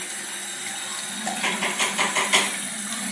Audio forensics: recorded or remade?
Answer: recorded